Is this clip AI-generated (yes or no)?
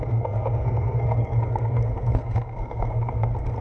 yes